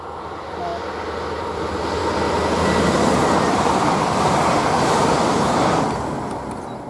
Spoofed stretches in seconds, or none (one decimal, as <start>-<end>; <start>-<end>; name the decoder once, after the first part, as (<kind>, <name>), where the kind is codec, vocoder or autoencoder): none